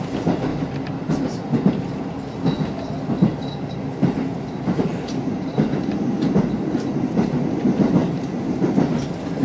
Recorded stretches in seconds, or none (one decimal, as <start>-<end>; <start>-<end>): 8.0-8.9